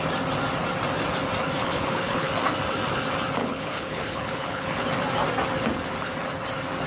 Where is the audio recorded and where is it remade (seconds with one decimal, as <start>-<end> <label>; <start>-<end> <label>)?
0.0-1.6 recorded; 1.6-2.3 remade; 2.3-3.4 recorded; 3.4-4.9 remade; 4.9-6.9 recorded